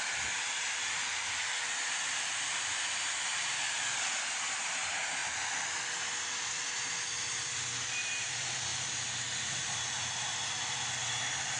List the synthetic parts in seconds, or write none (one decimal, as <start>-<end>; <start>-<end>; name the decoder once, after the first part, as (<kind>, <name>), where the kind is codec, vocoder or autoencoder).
none

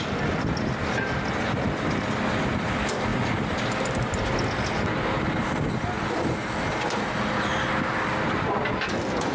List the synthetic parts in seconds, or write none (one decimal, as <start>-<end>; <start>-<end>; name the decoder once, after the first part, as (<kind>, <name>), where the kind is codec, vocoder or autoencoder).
none

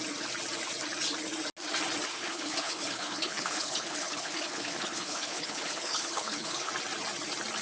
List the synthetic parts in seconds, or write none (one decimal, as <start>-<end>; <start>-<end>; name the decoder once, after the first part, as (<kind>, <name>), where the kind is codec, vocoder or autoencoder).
2.1-6.7 (codec, HILCodec)

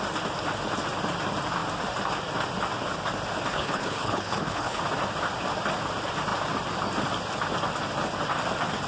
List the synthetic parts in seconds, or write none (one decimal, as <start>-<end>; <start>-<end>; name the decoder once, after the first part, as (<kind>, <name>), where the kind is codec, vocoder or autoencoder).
3.5-4.8 (codec, HILCodec)

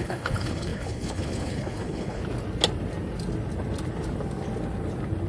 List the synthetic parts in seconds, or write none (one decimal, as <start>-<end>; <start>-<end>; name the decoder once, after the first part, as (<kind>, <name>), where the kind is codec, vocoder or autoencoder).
0.0-2.2 (codec, HILCodec)

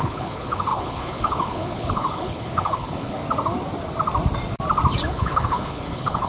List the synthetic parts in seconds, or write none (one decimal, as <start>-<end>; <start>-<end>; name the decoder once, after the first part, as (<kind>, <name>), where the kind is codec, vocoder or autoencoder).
0.0-3.2 (codec, HILCodec); 5.1-6.3